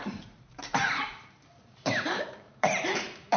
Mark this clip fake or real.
fake